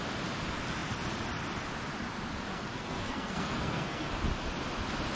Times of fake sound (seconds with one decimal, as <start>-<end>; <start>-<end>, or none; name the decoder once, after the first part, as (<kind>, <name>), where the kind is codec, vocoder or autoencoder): 2.5-4.1 (codec, SNAC)